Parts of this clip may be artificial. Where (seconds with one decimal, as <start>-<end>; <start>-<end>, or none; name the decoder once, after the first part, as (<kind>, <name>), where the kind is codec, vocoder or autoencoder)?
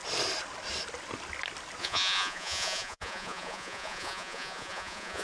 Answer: 1.8-5.2 (vocoder, Vocos)